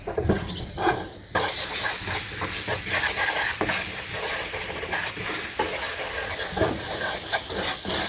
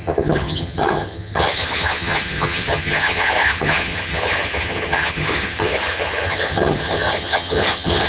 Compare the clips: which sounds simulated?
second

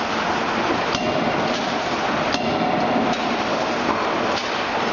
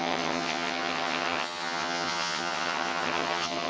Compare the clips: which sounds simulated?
second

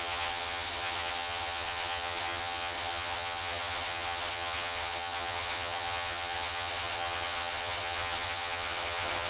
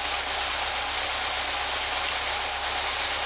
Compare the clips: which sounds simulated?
first